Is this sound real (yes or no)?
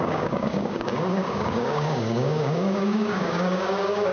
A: no